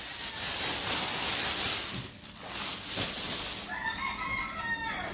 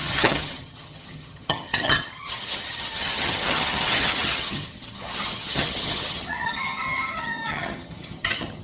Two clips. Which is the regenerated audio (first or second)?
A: second